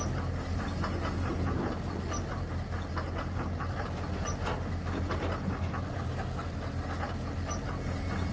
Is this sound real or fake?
real